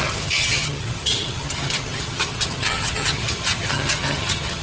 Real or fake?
fake